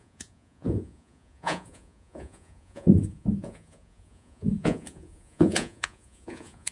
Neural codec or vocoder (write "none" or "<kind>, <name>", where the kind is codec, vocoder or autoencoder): vocoder, Vocos